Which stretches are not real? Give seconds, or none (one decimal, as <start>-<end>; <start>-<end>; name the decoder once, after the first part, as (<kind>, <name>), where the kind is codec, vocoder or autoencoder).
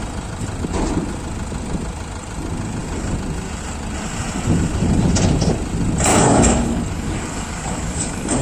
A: 6.1-8.4 (codec, DAC)